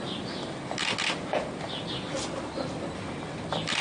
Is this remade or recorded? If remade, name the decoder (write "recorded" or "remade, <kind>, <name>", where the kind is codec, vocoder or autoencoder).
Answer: recorded